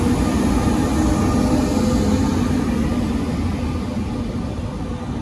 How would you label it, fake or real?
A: real